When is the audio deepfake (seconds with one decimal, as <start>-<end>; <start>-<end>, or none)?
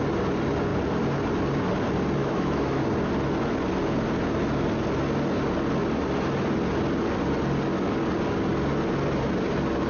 2.2-2.8